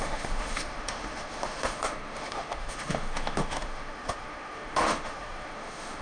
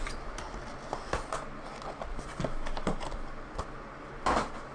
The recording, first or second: second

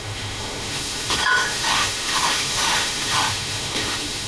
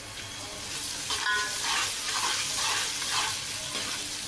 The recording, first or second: second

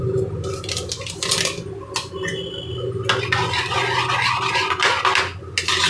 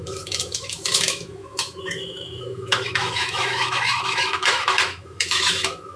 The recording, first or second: first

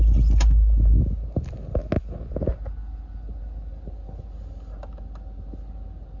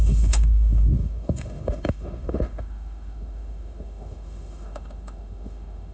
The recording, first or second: first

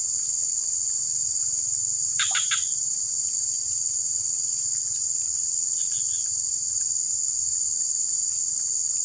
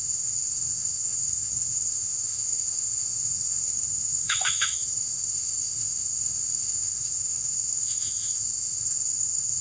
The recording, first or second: first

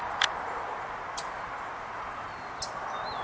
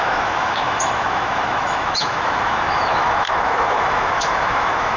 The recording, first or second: first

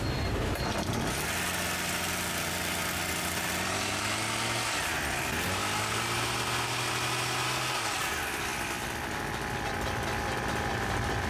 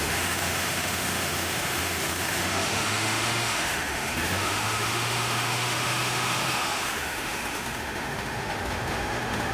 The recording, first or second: first